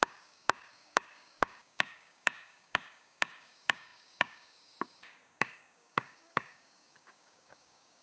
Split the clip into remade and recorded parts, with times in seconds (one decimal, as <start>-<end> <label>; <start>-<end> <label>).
0.0-8.0 remade